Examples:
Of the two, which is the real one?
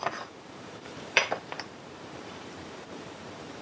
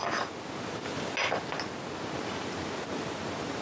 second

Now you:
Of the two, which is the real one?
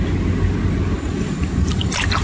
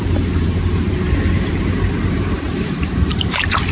first